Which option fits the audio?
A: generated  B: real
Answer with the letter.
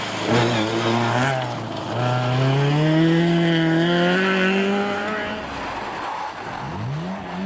B